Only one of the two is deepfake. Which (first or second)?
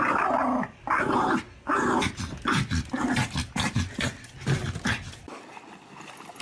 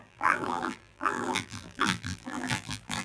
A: second